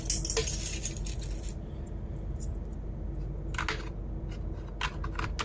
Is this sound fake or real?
real